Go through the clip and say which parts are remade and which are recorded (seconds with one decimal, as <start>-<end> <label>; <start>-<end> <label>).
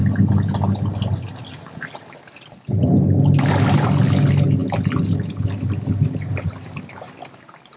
0.0-7.8 recorded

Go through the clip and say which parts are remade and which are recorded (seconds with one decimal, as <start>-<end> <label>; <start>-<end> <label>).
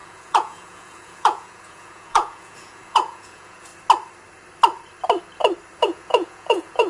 0.0-3.7 remade; 3.7-5.8 recorded; 5.8-6.9 remade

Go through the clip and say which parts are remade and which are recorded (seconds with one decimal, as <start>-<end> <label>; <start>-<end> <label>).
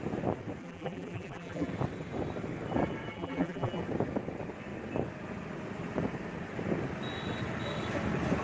0.0-0.6 recorded; 0.6-1.7 remade; 1.7-3.1 recorded; 3.1-3.8 remade; 3.8-8.4 recorded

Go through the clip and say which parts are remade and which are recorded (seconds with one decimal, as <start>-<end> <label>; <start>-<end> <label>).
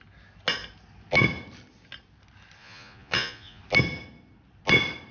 0.0-2.6 recorded; 2.6-3.6 remade; 3.6-5.1 recorded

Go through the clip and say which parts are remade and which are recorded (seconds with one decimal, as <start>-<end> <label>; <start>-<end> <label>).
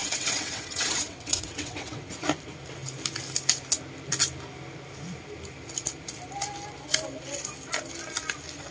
0.0-2.0 remade; 2.0-8.7 recorded